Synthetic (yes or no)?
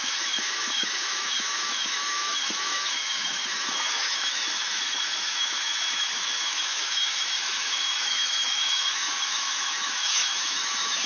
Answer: yes